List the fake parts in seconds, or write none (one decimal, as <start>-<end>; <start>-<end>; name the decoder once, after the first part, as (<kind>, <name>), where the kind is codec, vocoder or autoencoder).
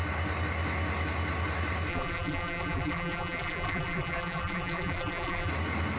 1.9-5.5 (vocoder, BigVGAN v2)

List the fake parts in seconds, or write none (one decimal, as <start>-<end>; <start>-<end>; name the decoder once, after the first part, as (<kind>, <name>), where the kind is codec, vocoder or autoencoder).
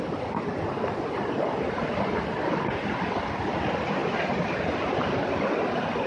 none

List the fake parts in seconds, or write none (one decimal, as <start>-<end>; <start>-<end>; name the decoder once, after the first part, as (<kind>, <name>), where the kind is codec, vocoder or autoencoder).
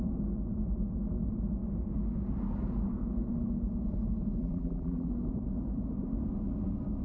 4.4-5.1 (vocoder, BigVGAN v2)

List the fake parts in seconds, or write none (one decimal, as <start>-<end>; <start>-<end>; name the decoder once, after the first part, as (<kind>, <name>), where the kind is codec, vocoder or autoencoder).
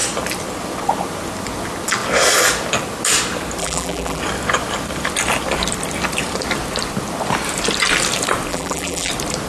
3.6-4.2 (vocoder, BigVGAN v2); 8.5-9.1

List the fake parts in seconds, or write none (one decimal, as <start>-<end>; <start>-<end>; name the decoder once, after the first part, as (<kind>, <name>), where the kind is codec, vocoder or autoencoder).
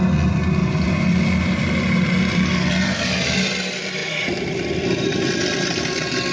0.6-2.7 (vocoder, BigVGAN v2); 4.0-5.8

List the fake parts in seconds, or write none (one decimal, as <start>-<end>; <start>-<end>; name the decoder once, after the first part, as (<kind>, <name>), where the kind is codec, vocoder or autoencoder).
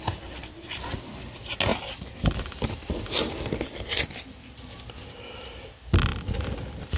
1.7-3.3 (vocoder, BigVGAN v2); 6.1-7.0